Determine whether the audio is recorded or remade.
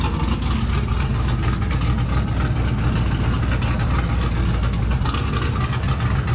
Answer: recorded